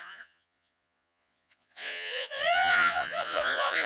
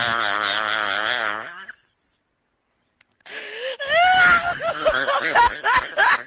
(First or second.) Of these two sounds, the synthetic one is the first